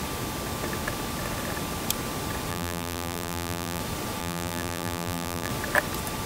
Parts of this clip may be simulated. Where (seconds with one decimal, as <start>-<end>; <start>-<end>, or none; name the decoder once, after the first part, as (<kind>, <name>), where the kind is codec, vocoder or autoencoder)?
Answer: 2.5-3.8 (vocoder, BigVGAN v2); 4.2-5.5